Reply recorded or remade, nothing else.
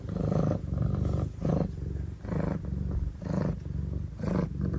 recorded